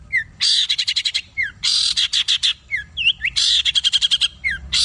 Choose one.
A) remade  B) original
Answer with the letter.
A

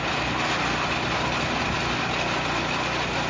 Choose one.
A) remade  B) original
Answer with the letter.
B